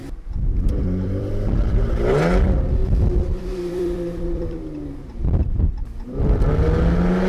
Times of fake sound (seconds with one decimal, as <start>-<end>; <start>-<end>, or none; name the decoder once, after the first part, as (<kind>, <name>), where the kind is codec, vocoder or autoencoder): 0.0-1.3 (vocoder, BigVGAN v2); 2.8-6.5